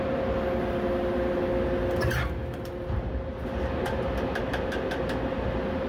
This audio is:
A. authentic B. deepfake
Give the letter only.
A